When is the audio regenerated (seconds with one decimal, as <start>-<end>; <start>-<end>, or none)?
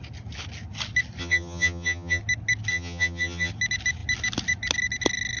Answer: 1.2-2.2; 2.7-3.5